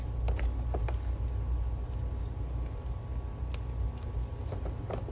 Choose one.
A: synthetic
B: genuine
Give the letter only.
B